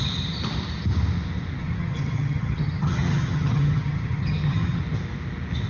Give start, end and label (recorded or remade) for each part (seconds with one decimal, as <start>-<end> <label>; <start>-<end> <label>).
0.0-1.6 recorded; 1.6-4.8 remade; 4.8-5.7 recorded